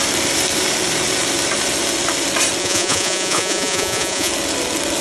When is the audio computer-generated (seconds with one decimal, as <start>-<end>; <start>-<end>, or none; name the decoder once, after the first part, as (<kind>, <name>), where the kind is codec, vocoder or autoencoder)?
2.6-4.3 (vocoder, Vocos)